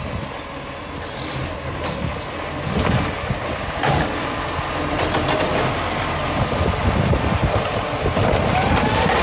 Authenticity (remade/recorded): recorded